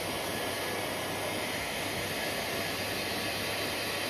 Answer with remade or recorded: recorded